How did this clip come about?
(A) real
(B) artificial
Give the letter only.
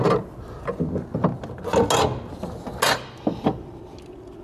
A